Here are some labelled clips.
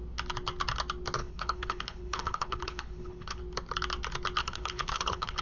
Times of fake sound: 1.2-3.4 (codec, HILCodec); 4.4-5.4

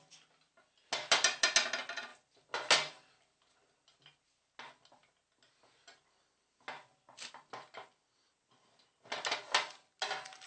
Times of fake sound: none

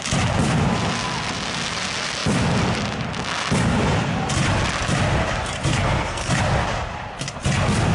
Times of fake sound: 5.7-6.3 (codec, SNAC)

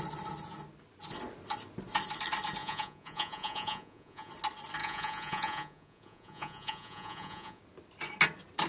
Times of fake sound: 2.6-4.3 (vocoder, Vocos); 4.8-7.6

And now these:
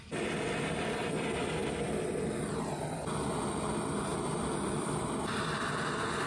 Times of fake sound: 4.1-5.4 (vocoder, BigVGAN v2)

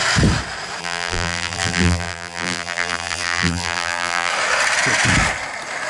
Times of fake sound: 0.8-4.3 (vocoder, BigVGAN v2)

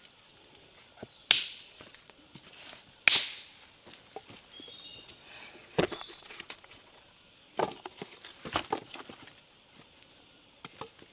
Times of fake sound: 1.5-2.2 (vocoder, Vocos); 4.9-7.1

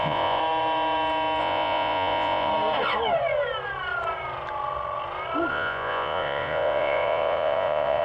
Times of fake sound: 0.0-0.4 (vocoder, Vocos); 1.4-2.5; 5.5-8.0